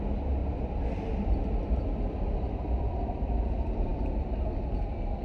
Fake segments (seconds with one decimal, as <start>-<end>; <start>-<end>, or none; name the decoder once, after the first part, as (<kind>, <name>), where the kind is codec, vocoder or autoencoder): 0.4-3.5 (vocoder, BigVGAN v2)